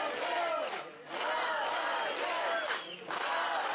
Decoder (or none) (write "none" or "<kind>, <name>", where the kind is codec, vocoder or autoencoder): none